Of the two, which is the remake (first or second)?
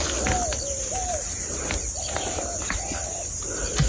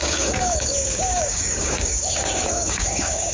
second